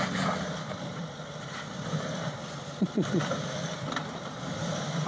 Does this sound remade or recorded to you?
recorded